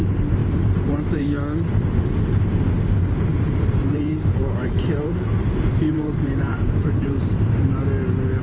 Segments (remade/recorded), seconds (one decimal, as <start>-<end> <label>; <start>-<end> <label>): 0.0-0.4 recorded; 0.4-1.4 remade; 1.4-3.3 recorded; 3.3-7.8 remade; 7.8-8.4 recorded